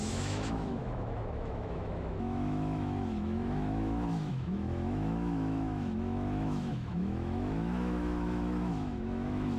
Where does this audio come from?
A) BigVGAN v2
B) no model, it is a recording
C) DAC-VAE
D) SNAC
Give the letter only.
C